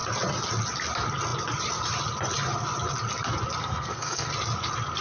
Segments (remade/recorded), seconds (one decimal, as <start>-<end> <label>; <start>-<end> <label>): 0.0-3.6 recorded; 3.6-4.3 remade; 4.3-5.0 recorded